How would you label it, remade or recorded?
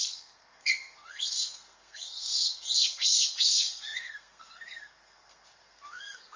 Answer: remade